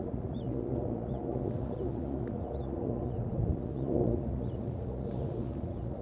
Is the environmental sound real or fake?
fake